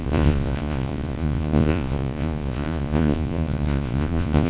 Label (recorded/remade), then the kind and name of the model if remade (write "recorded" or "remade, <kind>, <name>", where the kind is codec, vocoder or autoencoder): remade, vocoder, Vocos